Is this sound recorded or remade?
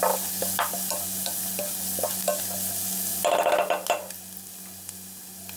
recorded